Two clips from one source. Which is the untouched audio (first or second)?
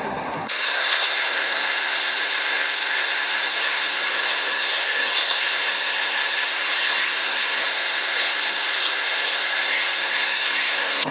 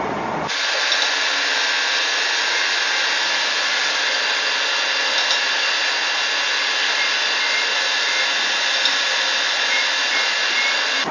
second